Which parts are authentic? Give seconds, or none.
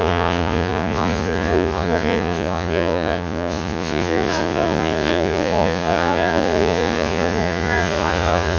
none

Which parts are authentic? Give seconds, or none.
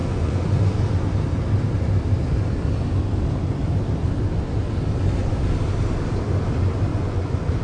0.6-6.9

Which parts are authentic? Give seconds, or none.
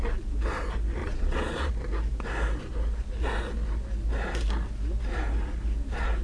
0.0-1.0; 1.7-6.2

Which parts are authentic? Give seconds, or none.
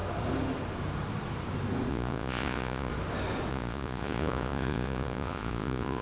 0.0-1.9; 2.9-3.5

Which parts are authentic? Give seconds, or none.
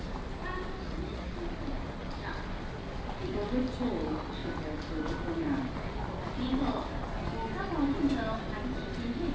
0.0-0.8; 1.3-9.3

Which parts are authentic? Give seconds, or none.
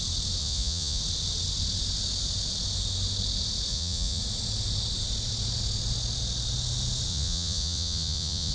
0.0-0.4; 1.0-3.7; 4.2-7.1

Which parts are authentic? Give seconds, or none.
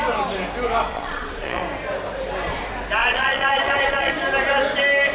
0.0-0.9; 1.6-3.0; 4.1-5.1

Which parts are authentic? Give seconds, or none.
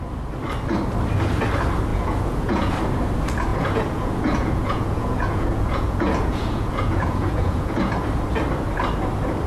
0.0-1.9; 2.7-3.5; 7.9-9.5